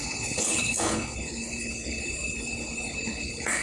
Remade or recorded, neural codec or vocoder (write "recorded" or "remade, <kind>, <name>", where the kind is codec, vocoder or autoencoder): remade, codec, HILCodec